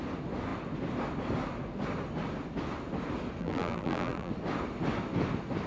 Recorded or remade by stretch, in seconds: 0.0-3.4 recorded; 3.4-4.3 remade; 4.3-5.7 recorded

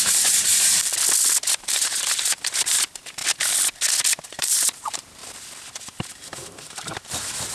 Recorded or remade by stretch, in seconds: 0.0-0.9 remade; 0.9-1.5 recorded; 1.5-3.2 remade; 3.2-4.3 recorded; 4.3-5.2 remade; 5.2-5.8 recorded; 5.8-7.5 remade